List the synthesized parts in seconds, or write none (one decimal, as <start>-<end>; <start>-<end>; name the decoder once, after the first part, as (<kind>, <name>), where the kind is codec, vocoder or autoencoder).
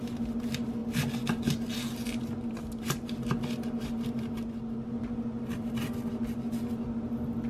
none